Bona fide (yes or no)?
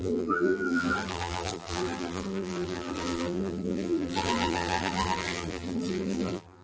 no